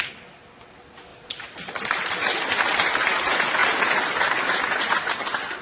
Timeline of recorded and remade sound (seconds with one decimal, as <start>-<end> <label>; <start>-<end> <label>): 0.0-1.1 recorded; 1.1-3.1 remade; 3.1-5.6 recorded